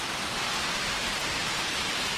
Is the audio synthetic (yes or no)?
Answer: no